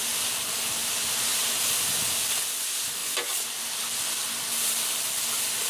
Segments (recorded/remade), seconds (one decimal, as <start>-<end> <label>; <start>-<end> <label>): 0.0-0.8 recorded; 0.8-1.9 remade; 1.9-5.7 recorded